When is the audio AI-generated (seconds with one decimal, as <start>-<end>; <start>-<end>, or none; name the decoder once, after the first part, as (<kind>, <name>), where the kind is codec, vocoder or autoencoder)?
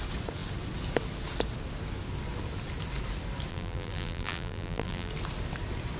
3.5-5.1 (vocoder, BigVGAN v2)